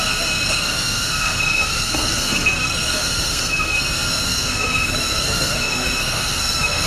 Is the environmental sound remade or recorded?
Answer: remade